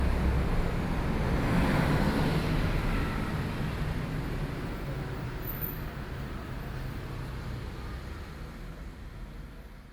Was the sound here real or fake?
real